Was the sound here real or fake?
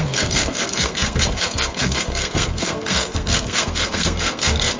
fake